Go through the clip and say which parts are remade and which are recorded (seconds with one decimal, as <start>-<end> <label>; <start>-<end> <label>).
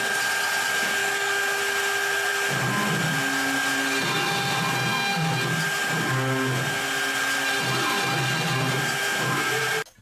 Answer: 0.0-1.0 recorded; 1.0-1.6 remade; 1.6-10.0 recorded